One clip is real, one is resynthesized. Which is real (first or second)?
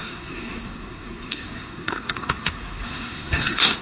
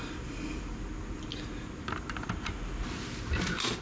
second